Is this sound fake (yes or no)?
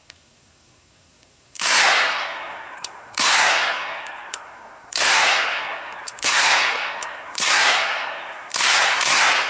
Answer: yes